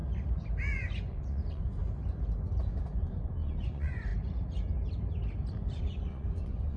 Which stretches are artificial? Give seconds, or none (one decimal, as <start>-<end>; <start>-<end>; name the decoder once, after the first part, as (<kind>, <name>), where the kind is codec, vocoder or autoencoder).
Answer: 0.7-1.8 (vocoder, Vocos); 2.6-4.1; 5.8-6.8